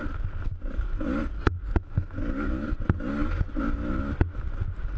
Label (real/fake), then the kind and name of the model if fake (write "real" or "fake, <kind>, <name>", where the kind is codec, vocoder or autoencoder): real